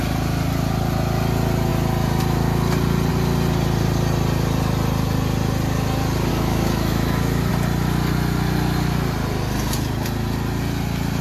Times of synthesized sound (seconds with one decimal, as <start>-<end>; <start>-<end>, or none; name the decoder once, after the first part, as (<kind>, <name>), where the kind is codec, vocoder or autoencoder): 6.3-7.5 (autoencoder, DAC-VAE)